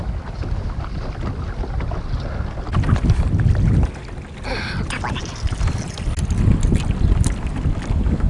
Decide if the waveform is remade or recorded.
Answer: recorded